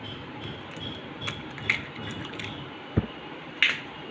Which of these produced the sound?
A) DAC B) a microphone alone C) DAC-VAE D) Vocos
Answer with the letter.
B